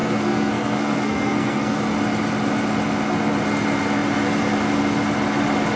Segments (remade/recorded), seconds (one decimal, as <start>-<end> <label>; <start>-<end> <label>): 0.0-1.8 remade; 1.8-5.8 recorded